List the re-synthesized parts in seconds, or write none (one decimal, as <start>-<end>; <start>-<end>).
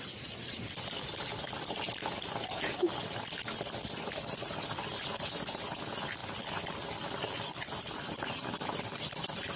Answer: 6.2-8.3